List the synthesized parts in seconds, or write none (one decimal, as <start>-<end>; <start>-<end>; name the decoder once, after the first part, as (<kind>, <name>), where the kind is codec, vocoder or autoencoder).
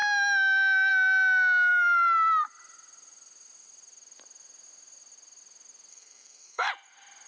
5.9-6.7 (codec, SNAC)